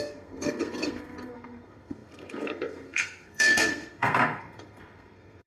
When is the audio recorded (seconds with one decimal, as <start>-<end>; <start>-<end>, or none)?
none